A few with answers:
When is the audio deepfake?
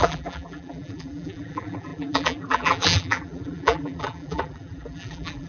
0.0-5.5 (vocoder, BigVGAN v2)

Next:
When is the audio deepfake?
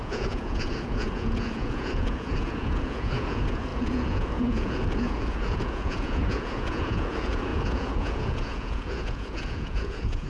0.0-10.3 (vocoder, Vocos)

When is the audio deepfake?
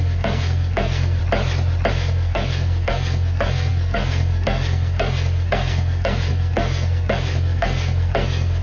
0.0-1.2 (codec, SNAC); 1.9-8.6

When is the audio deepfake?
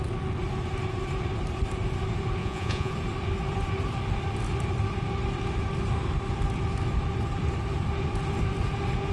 2.4-2.9 (vocoder, Vocos)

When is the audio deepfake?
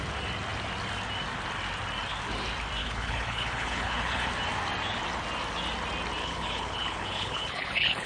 2.8-4.3 (codec, HILCodec); 6.2-8.1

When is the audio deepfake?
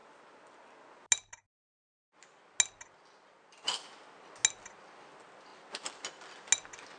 none